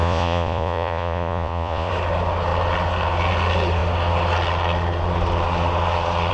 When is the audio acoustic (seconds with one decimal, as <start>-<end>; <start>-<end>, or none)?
1.9-6.3